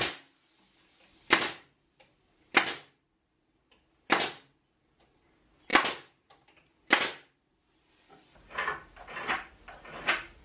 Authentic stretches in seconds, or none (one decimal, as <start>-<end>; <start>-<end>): 0.0-10.4

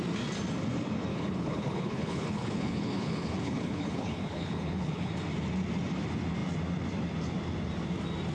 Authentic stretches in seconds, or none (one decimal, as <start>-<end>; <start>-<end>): 0.0-1.1; 5.1-8.3

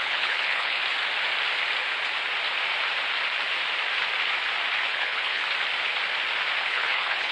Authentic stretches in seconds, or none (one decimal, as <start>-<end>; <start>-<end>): 0.8-4.9; 5.4-6.6

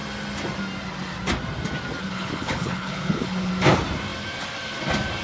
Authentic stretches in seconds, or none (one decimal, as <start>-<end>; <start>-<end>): 0.0-2.0; 3.5-5.2